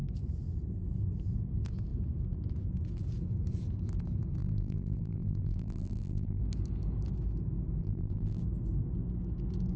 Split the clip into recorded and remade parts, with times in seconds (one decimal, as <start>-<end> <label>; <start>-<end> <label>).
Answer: 0.0-4.4 recorded; 4.4-6.4 remade; 6.4-7.8 recorded; 7.8-8.4 remade; 8.4-9.8 recorded